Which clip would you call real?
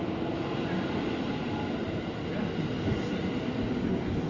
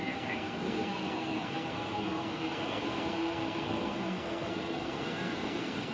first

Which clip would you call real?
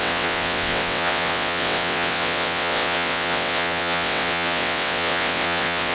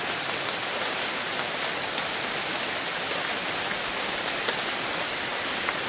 second